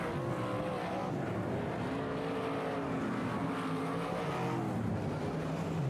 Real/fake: real